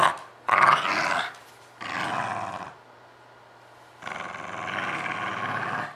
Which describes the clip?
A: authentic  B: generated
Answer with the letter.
A